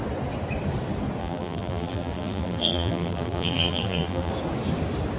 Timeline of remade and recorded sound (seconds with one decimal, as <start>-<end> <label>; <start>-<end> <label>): 0.0-1.2 recorded; 1.2-4.3 remade; 4.3-5.2 recorded